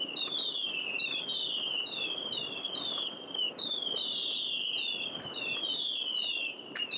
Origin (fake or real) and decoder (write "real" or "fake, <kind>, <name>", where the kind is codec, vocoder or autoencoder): real